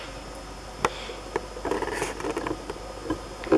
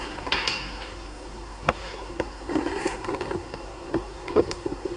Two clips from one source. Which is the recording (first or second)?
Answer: first